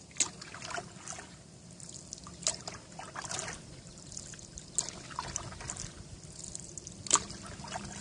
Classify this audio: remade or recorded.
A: recorded